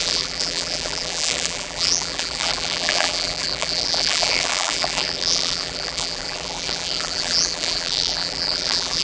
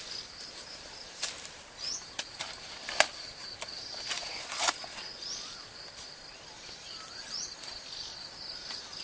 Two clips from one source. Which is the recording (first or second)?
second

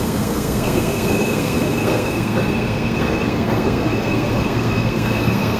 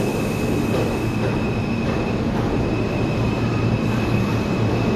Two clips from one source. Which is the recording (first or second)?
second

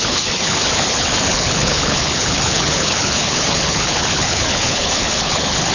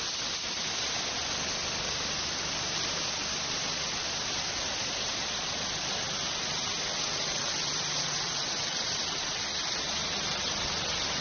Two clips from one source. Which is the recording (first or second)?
second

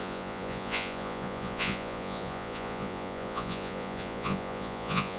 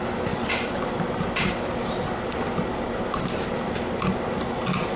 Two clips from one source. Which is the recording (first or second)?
second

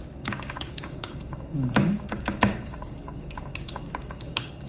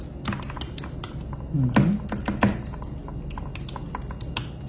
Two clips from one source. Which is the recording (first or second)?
second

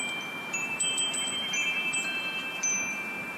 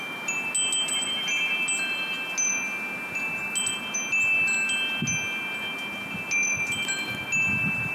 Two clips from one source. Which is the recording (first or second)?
second